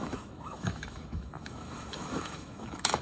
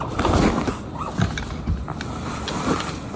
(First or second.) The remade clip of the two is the first